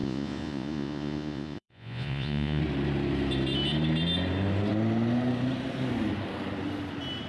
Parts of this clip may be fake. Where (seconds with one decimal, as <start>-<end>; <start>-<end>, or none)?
0.0-2.6